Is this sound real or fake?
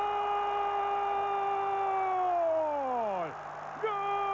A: real